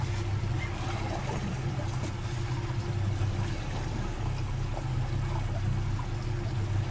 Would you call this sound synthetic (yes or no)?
no